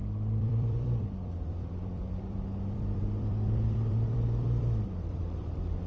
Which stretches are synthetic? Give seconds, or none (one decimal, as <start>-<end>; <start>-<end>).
0.0-5.9